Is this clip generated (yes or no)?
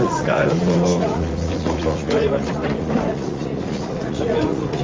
yes